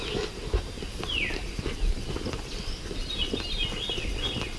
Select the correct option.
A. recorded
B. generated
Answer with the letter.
A